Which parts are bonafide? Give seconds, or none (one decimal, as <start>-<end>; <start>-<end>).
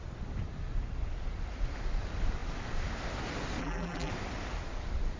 0.0-3.6; 4.1-5.2